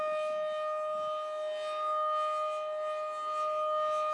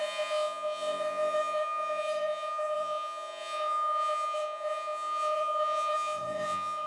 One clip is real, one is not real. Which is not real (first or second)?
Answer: second